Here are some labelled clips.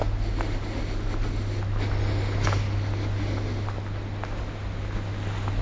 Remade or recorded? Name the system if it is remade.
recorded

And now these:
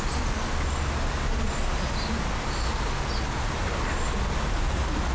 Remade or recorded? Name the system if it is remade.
recorded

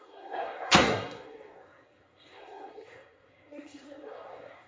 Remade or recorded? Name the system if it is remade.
remade, codec, SNAC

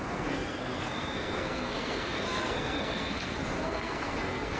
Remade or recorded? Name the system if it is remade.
remade, codec, SNAC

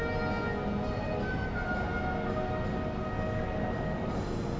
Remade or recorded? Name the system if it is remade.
recorded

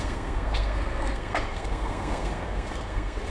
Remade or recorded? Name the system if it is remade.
remade, codec, SNAC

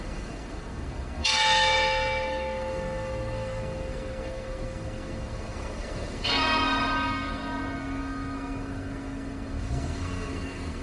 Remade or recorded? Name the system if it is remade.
remade, codec, SNAC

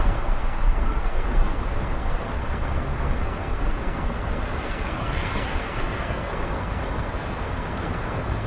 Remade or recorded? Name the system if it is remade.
remade, codec, SNAC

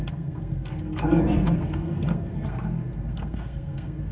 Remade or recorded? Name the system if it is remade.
remade, codec, SNAC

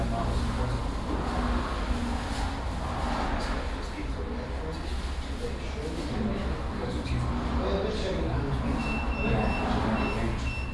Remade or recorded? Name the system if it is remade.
recorded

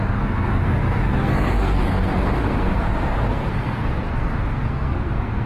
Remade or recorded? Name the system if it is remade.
remade, codec, SNAC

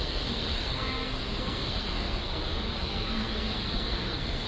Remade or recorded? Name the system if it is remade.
remade, codec, SNAC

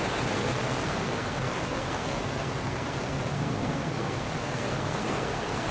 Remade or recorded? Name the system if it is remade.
remade, codec, SNAC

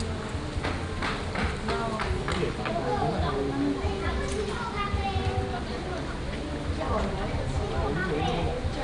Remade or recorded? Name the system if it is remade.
recorded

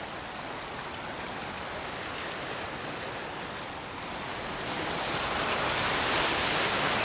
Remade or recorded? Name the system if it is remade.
recorded